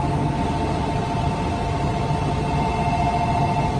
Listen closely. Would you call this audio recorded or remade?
recorded